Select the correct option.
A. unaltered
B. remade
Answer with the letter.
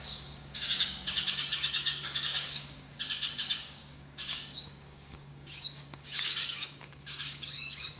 B